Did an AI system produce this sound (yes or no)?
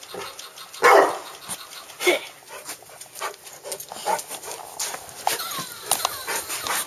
no